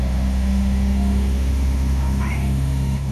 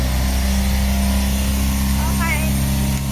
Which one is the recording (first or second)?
second